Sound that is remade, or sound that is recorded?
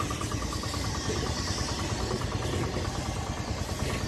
recorded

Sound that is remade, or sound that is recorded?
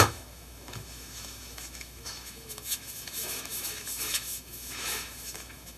remade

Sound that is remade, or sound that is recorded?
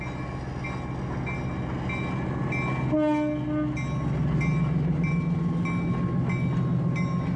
recorded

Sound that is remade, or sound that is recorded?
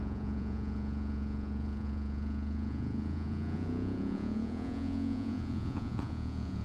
remade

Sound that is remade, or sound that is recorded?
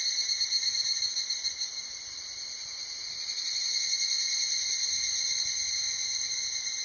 recorded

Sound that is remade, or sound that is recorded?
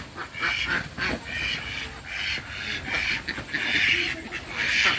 recorded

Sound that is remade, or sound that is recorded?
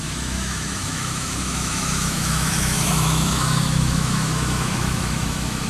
remade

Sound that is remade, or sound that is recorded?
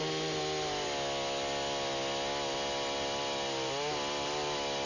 recorded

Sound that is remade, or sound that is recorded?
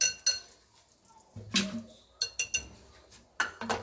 recorded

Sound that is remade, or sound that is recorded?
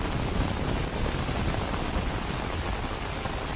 recorded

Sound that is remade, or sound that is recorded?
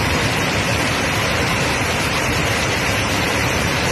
remade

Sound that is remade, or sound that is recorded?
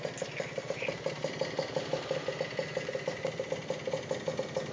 recorded